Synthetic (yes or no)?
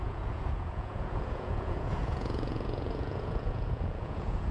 yes